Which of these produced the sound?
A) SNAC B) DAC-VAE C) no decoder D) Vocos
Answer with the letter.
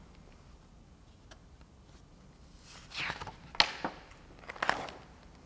C